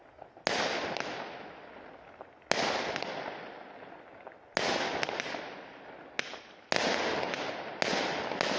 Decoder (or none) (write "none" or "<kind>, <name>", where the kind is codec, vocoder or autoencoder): none